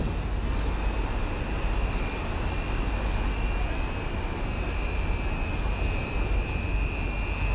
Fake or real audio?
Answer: real